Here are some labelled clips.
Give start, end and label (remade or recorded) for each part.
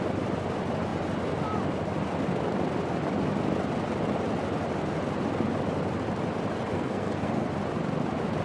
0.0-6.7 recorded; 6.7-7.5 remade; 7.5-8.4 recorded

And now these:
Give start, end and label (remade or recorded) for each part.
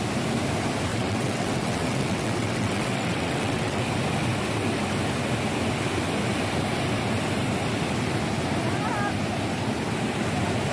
0.0-0.9 recorded; 0.9-3.8 remade; 3.8-10.7 recorded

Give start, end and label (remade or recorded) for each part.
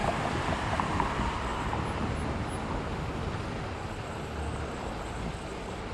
0.0-1.5 remade; 1.5-5.0 recorded; 5.0-5.9 remade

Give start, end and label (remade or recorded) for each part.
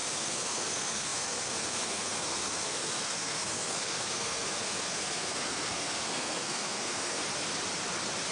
0.0-7.2 remade; 7.2-8.3 recorded